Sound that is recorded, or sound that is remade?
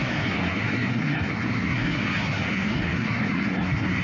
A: remade